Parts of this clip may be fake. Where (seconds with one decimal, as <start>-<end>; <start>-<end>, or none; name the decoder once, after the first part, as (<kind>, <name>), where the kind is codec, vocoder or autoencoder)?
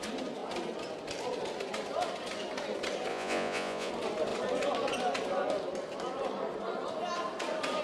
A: 3.1-3.9 (vocoder, Vocos)